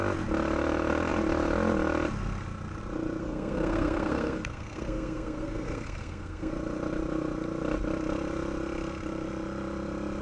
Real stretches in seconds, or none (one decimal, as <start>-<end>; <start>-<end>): 0.0-3.2; 6.5-10.2